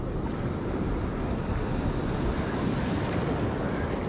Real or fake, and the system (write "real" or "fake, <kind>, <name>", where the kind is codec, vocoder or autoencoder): real